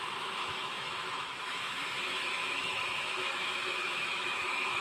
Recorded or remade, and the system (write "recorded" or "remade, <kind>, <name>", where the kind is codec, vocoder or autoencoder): remade, autoencoder, DAC-VAE